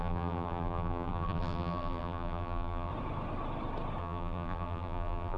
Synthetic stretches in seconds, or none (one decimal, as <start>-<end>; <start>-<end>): 0.0-2.9; 4.0-5.4